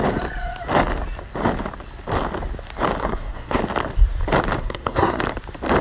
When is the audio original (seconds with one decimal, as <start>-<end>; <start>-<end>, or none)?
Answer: 0.0-3.0; 3.6-4.6; 5.2-5.8